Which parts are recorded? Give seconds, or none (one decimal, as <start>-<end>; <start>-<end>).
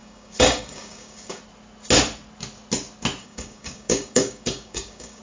1.4-3.2